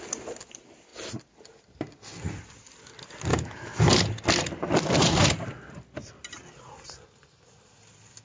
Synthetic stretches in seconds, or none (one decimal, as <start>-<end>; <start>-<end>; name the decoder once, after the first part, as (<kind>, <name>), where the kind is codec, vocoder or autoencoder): 3.3-3.9 (autoencoder, DAC-VAE)